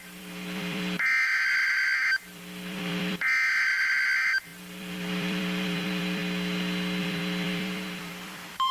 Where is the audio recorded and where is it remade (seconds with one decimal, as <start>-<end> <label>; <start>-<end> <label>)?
0.0-6.2 remade; 6.2-7.0 recorded; 7.0-8.7 remade

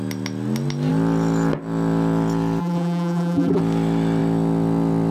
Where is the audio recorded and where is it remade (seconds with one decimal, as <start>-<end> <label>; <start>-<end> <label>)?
0.0-2.6 recorded; 2.6-3.6 remade; 3.6-5.1 recorded

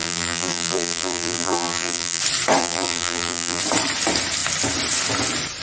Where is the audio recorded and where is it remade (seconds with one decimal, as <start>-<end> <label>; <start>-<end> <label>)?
0.0-2.2 remade; 2.2-2.6 recorded; 2.6-3.6 remade; 3.6-5.6 recorded